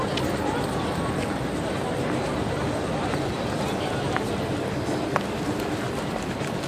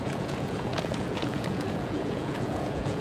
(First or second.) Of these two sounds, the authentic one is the first